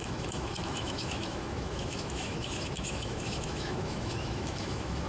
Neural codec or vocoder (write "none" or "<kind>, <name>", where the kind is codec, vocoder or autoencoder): autoencoder, DAC-VAE